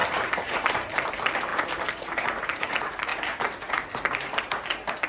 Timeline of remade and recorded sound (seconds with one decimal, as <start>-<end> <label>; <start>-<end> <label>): 0.0-3.1 remade; 3.1-3.7 recorded; 3.7-5.1 remade